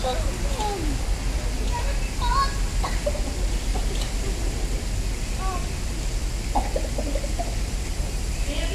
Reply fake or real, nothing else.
real